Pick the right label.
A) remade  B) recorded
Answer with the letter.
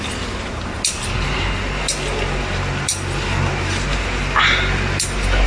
B